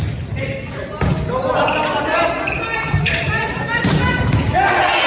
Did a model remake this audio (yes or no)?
no